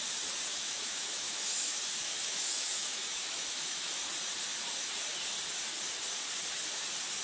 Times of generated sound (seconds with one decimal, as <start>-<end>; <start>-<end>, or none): 0.5-4.1